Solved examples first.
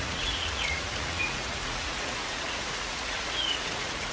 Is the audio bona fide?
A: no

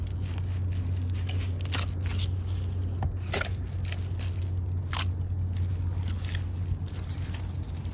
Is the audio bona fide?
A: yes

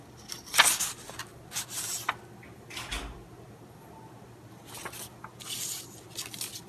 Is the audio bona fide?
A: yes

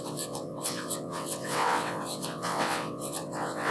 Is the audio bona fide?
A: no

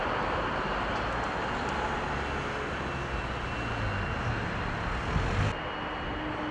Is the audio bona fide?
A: yes